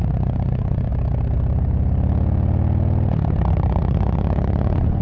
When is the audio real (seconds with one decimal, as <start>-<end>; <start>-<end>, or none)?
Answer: 0.9-3.5

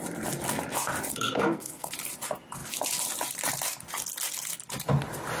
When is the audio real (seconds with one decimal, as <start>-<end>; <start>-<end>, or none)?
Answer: 0.0-1.1; 1.9-5.4

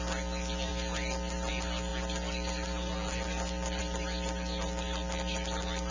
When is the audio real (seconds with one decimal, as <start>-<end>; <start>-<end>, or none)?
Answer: 0.0-5.9

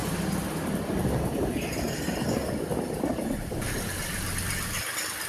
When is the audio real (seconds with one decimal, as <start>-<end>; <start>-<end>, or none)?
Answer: 0.0-5.3